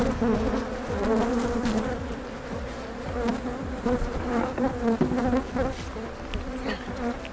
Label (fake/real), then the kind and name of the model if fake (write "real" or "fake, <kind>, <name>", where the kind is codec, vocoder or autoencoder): real